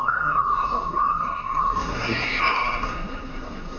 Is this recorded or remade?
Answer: remade